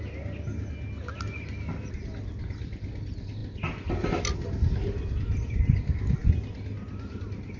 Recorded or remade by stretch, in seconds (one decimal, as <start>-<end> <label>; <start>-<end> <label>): 0.0-7.6 recorded